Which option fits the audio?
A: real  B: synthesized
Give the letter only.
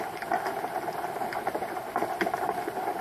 A